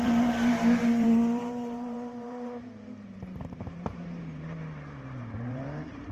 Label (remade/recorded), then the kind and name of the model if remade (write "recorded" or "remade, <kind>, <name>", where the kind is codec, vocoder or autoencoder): remade, vocoder, BigVGAN v2